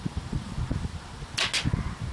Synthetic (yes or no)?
no